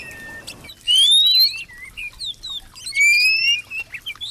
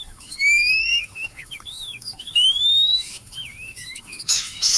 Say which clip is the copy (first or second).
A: second